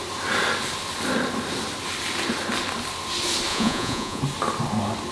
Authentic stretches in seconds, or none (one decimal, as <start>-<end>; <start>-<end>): 0.0-3.5; 4.2-5.1